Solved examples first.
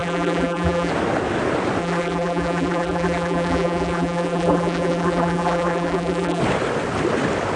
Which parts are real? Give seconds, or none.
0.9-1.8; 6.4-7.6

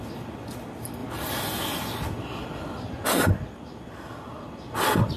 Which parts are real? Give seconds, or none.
0.0-5.2